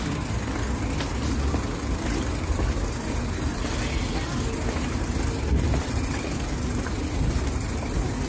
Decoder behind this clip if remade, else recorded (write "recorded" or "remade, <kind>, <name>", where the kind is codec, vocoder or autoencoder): recorded